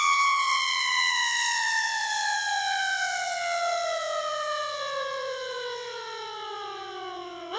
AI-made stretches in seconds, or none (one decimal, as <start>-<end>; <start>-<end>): 0.0-7.6